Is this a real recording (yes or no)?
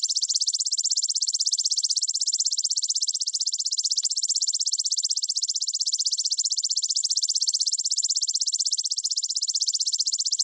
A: no